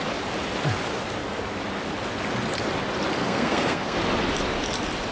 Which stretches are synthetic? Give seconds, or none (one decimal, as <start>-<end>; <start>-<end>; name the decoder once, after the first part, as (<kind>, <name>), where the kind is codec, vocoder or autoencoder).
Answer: 3.2-4.0 (codec, SNAC)